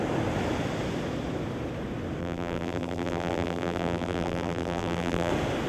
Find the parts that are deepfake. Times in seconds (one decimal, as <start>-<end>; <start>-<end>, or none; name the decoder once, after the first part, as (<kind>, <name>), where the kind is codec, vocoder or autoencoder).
2.2-5.3 (vocoder, BigVGAN v2)